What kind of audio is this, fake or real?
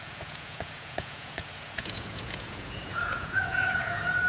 fake